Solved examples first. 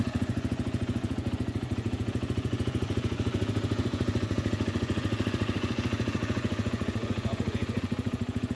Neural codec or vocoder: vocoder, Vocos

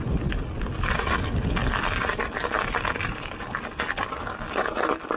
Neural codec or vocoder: none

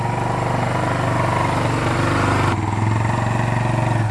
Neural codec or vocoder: none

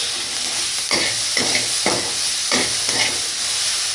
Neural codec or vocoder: none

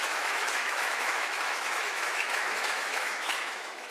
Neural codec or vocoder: autoencoder, DAC-VAE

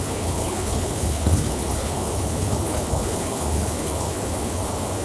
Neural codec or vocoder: codec, HILCodec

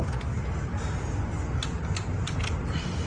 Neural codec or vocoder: none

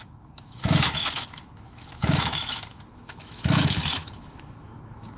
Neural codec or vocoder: autoencoder, DAC-VAE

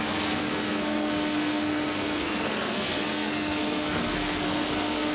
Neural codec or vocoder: codec, SNAC